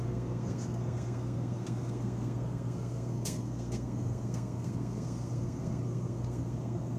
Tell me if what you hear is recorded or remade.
remade